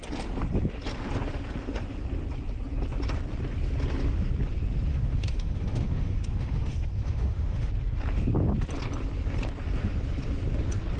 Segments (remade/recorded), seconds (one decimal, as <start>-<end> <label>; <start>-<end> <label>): 0.0-4.9 recorded; 4.9-7.7 remade; 7.7-11.0 recorded